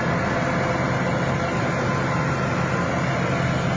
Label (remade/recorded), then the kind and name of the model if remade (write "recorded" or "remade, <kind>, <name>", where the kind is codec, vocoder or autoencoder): recorded